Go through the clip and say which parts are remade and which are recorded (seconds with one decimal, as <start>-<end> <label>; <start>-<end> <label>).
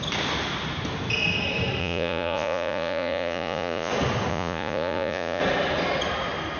0.0-1.8 recorded; 1.8-3.9 remade; 3.9-4.3 recorded; 4.3-5.4 remade; 5.4-6.6 recorded